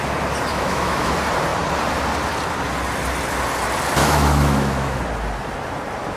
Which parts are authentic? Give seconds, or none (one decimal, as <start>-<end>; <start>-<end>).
0.0-0.5; 1.1-4.0; 5.0-6.2